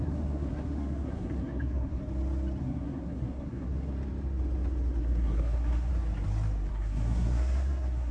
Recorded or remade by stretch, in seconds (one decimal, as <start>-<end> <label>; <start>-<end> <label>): 0.0-2.0 remade; 2.0-2.6 recorded; 2.6-3.9 remade; 3.9-5.0 recorded; 5.0-5.9 remade; 5.9-6.7 recorded; 6.7-8.1 remade

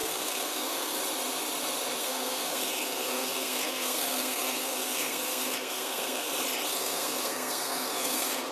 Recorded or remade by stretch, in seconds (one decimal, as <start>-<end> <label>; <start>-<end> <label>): 0.0-1.0 remade; 1.0-2.0 recorded; 2.0-6.3 remade; 6.3-6.7 recorded; 6.7-8.5 remade

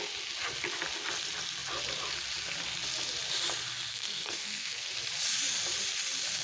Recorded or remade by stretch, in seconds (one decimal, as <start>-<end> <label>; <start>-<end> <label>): 0.0-3.9 recorded; 3.9-4.9 remade; 4.9-6.4 recorded

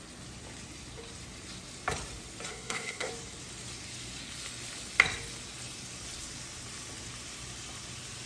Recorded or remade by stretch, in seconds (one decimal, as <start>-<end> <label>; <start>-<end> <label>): 0.0-2.5 recorded; 2.5-3.1 remade; 3.1-8.3 recorded

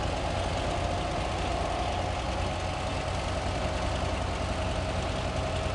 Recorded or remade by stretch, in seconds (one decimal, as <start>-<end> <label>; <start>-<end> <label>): 0.0-5.7 recorded

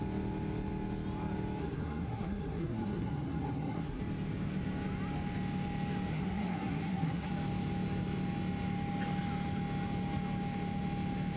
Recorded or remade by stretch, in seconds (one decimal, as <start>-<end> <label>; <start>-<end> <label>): 0.0-1.6 recorded; 1.6-4.0 remade; 4.0-6.1 recorded; 6.1-7.3 remade; 7.3-11.4 recorded

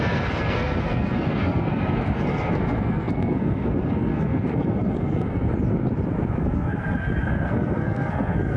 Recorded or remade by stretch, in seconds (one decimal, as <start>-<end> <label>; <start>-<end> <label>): 0.0-5.5 remade; 5.5-6.3 recorded; 6.3-8.6 remade

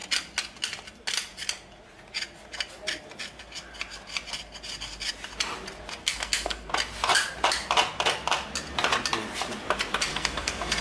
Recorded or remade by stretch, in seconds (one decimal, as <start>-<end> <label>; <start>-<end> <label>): 0.0-6.0 recorded; 6.0-6.7 remade; 6.7-10.1 recorded; 10.1-10.8 remade